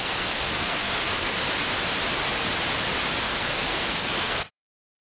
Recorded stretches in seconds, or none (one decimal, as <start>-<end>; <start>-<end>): 1.4-3.2